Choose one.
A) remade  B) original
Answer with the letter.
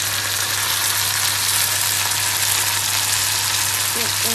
B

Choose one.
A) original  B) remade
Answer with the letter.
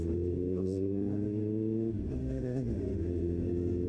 B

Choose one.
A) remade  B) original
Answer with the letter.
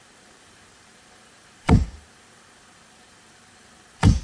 A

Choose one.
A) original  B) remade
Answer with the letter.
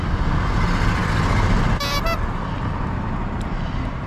A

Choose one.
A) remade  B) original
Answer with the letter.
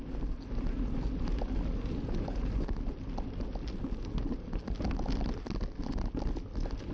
B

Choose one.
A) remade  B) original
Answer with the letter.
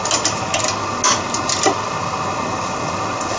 B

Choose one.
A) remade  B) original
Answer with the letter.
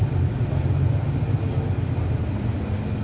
B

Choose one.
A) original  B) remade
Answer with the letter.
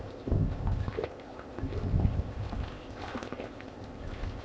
B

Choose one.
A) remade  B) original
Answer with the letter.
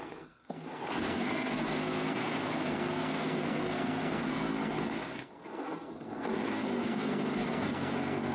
A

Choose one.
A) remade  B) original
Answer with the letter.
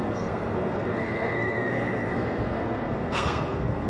A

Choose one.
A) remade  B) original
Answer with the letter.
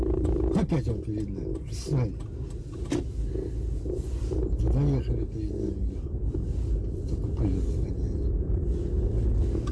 B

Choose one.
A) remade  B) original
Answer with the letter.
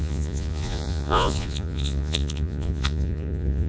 A